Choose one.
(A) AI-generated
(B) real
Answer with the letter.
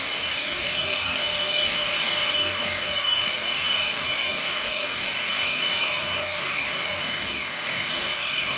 A